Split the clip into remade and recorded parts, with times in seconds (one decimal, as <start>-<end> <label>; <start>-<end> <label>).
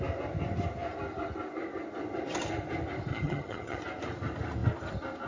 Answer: 0.0-3.1 recorded; 3.1-3.8 remade; 3.8-5.3 recorded